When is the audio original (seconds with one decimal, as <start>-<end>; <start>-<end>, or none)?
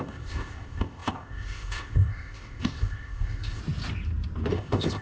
3.6-4.5